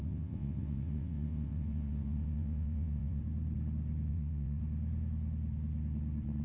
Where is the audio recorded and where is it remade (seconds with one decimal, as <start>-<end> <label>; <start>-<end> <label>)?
0.0-3.2 remade; 3.2-4.1 recorded; 4.1-4.6 remade; 4.6-6.4 recorded

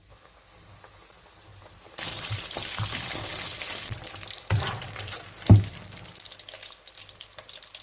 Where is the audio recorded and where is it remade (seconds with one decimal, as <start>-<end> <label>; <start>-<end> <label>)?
0.0-1.5 recorded; 1.5-5.2 remade; 5.2-7.8 recorded

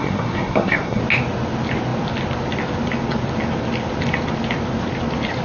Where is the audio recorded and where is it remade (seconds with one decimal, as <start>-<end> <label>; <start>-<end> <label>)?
0.0-1.0 remade; 1.0-5.4 recorded

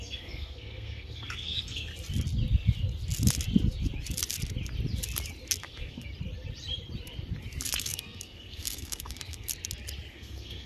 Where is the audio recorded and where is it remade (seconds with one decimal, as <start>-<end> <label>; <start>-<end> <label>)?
0.0-1.9 remade; 1.9-5.6 recorded; 5.6-6.1 remade; 6.1-7.8 recorded; 7.8-9.5 remade; 9.5-10.1 recorded; 10.1-10.7 remade

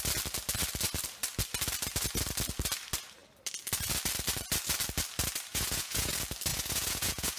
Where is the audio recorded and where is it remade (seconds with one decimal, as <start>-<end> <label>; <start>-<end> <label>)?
0.0-5.5 recorded; 5.5-6.1 remade; 6.1-6.5 recorded; 6.5-7.4 remade

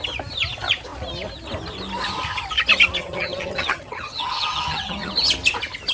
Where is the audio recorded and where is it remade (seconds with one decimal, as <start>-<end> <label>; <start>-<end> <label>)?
0.0-3.0 recorded; 3.0-5.1 remade; 5.1-5.9 recorded

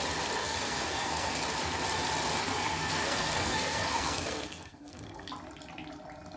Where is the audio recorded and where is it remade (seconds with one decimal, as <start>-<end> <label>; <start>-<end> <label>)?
0.0-0.4 recorded; 0.4-1.4 remade; 1.4-2.5 recorded; 2.5-5.3 remade; 5.3-6.4 recorded

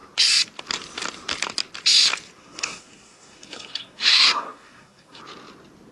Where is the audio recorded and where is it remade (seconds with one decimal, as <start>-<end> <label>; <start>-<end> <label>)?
0.0-2.4 recorded; 2.4-5.2 remade; 5.2-5.9 recorded